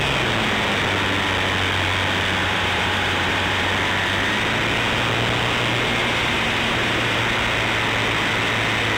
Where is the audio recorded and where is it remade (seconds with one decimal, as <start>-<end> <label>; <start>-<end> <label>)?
0.0-2.4 recorded; 2.4-3.7 remade; 3.7-6.0 recorded; 6.0-7.2 remade; 7.2-9.0 recorded